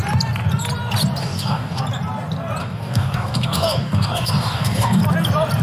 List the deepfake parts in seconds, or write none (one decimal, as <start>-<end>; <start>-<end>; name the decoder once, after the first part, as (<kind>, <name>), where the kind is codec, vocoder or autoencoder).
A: 1.2-1.8 (codec, DAC); 2.6-5.0